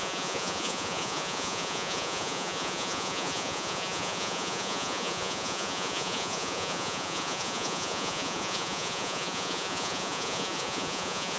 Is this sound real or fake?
fake